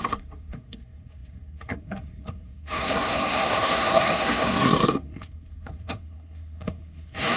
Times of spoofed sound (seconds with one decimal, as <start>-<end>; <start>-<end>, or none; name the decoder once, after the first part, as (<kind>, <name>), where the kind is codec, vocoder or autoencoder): 0.0-7.4 (codec, SNAC)